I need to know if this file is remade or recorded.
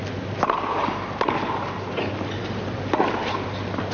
recorded